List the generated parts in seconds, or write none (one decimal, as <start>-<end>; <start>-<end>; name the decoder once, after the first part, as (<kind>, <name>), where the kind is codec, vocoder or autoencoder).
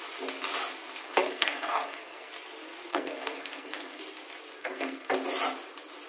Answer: 1.0-2.3 (codec, SNAC); 2.9-4.0; 4.6-5.1